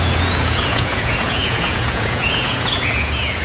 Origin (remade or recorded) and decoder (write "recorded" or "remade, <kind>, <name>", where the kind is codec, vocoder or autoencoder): remade, vocoder, Vocos